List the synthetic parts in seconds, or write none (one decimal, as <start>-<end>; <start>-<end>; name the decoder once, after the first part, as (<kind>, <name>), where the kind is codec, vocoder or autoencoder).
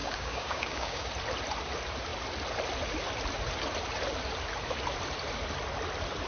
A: 0.0-1.1 (codec, DAC)